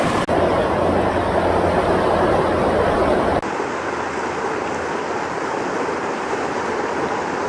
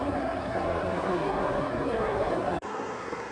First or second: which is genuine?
first